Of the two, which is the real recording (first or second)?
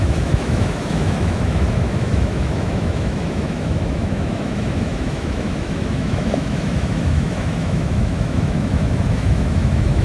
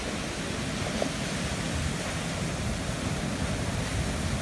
second